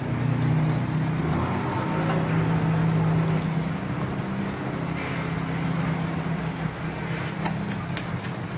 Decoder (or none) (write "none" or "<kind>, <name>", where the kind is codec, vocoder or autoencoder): none